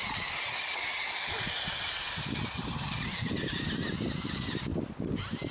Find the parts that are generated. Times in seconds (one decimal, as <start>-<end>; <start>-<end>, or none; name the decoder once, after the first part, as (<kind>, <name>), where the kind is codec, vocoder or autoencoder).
none